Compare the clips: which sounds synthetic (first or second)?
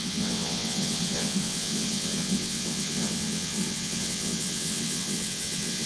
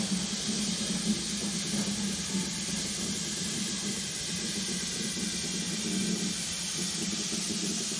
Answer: first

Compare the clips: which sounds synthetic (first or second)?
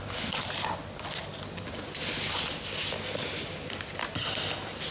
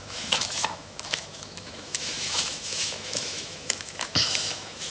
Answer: second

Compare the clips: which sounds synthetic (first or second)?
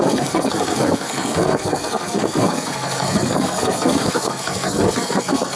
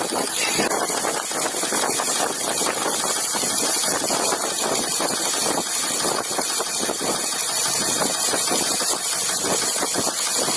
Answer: first